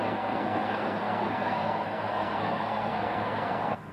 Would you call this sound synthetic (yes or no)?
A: yes